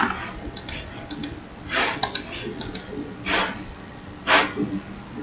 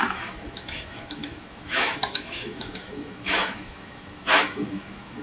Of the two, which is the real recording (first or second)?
first